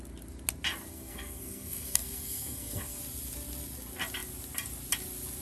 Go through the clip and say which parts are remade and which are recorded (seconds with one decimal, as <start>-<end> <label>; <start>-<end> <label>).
0.0-0.9 recorded; 0.9-3.0 remade; 3.0-5.4 recorded